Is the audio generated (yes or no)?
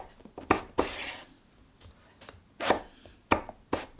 no